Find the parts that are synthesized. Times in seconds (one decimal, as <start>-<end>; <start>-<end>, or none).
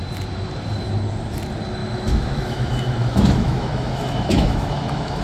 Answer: 1.8-5.2